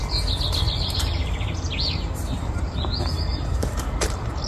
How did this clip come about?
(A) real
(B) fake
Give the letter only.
A